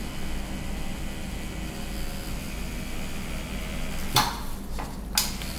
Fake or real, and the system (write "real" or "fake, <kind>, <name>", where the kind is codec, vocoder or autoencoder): real